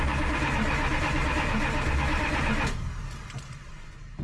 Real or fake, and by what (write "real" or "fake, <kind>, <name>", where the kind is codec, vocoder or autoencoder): real